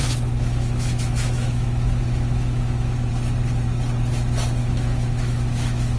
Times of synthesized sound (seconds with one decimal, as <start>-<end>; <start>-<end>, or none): 0.0-3.1; 4.6-6.0